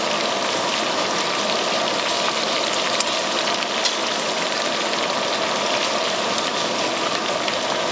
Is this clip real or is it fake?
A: real